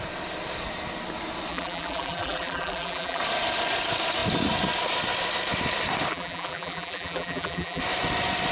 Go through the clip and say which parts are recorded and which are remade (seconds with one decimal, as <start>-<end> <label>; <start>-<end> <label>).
0.0-1.5 recorded; 1.5-3.2 remade; 3.2-6.1 recorded; 6.1-7.8 remade; 7.8-8.5 recorded

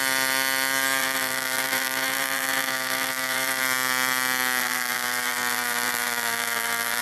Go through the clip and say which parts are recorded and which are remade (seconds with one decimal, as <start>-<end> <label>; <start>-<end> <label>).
0.0-1.0 recorded; 1.0-3.6 remade; 3.6-4.6 recorded; 4.6-7.0 remade

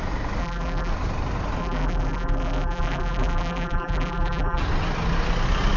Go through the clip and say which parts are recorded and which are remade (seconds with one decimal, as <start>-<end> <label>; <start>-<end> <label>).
0.0-0.4 recorded; 0.4-0.9 remade; 0.9-1.6 recorded; 1.6-4.6 remade; 4.6-5.8 recorded

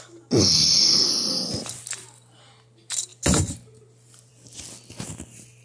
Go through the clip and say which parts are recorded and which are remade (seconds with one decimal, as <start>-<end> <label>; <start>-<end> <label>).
0.0-5.6 recorded

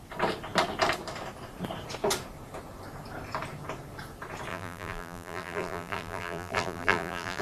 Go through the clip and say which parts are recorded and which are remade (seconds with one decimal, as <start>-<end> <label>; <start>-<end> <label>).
0.0-4.5 recorded; 4.5-7.4 remade